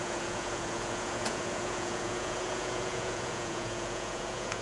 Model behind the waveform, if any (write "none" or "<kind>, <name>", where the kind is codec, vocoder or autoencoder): vocoder, Vocos